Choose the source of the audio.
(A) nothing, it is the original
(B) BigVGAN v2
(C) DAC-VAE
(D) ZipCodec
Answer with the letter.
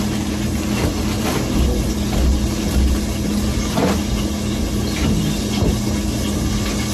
A